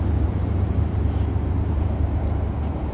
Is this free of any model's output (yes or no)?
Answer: no